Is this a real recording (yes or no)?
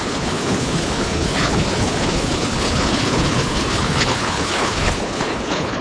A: no